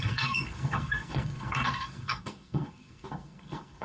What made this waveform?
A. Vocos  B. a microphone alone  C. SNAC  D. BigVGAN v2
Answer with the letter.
C